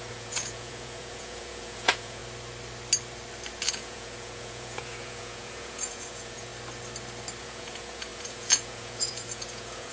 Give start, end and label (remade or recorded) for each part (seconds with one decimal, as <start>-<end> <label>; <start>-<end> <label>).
0.0-2.2 remade; 2.2-3.7 recorded; 3.7-6.5 remade; 6.5-7.4 recorded; 7.4-9.9 remade

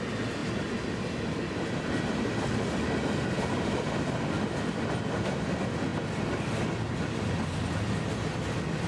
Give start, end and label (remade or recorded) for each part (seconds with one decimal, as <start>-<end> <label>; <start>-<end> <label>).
0.0-8.9 recorded

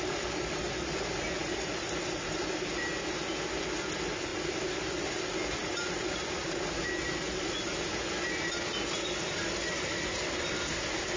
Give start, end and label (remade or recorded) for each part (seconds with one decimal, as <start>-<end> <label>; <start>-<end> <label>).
0.0-1.4 recorded; 1.4-2.9 remade; 2.9-4.3 recorded; 4.3-5.0 remade; 5.0-5.6 recorded; 5.6-6.8 remade; 6.8-11.2 recorded

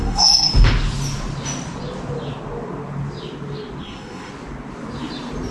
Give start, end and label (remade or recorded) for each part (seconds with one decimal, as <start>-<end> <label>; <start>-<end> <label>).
0.0-0.5 remade; 0.5-3.8 recorded; 3.8-4.3 remade; 4.3-5.5 recorded

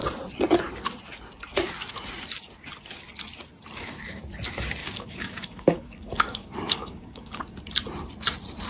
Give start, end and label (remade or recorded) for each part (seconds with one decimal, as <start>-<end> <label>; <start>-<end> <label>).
0.0-4.8 recorded; 4.8-7.4 remade; 7.4-8.7 recorded

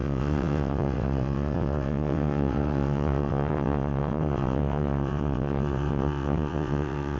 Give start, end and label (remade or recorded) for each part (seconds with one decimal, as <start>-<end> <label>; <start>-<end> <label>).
0.0-7.2 remade

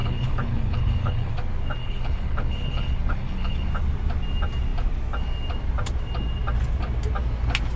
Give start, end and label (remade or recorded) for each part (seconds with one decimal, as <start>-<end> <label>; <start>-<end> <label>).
0.0-1.3 remade; 1.3-1.8 recorded; 1.8-3.7 remade; 3.7-7.8 recorded

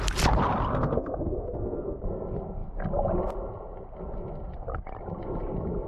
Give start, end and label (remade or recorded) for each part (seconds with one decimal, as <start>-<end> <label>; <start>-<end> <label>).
0.0-0.7 recorded; 0.7-2.0 remade; 2.0-5.9 recorded